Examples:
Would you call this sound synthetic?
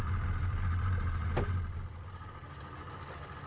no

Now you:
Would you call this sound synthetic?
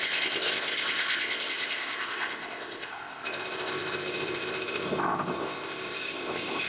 yes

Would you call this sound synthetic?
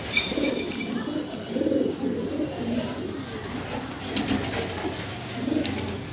no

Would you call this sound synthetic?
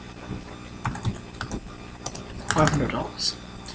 no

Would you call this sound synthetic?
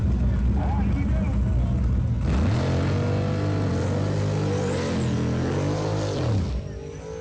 no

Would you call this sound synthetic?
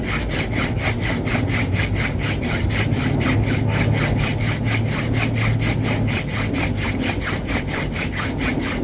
no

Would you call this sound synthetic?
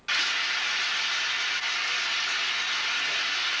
no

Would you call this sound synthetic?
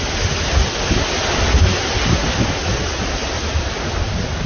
no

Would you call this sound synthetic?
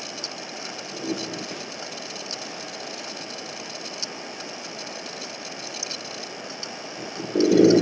no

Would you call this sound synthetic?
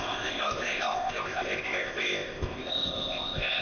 yes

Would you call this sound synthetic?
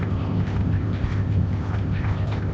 yes